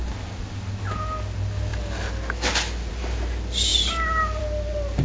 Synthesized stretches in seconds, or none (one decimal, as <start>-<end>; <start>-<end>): none